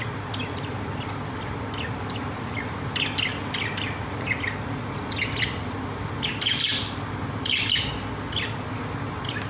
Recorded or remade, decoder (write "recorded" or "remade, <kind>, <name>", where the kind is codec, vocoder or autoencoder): recorded